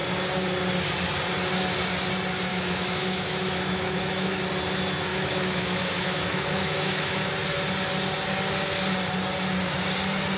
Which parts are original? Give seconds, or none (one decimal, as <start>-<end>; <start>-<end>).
0.0-2.5; 4.4-5.1; 7.3-10.4